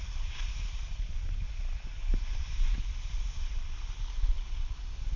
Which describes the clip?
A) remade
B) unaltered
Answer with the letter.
B